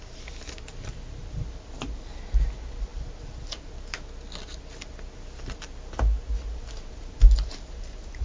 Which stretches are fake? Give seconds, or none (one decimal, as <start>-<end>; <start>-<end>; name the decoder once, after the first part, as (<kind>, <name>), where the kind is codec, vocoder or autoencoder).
none